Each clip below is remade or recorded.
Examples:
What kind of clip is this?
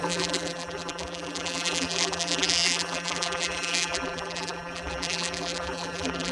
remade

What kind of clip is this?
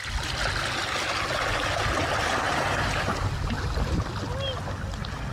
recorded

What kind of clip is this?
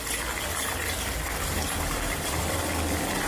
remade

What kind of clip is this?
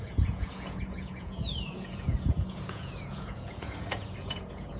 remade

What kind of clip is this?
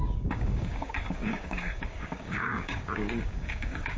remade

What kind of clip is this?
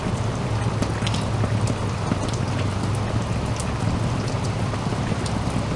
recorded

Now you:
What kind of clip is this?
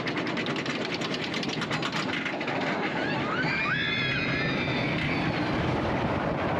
recorded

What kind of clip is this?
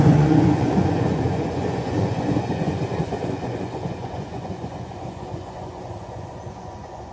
remade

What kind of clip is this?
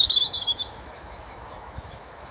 remade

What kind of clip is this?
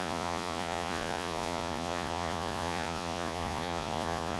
remade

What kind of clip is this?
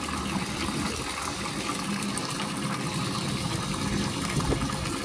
recorded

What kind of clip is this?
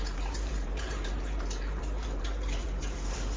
remade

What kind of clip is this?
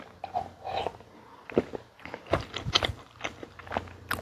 recorded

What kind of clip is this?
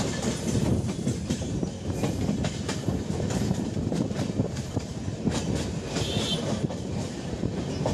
remade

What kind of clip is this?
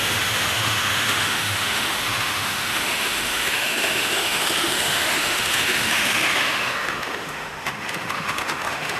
remade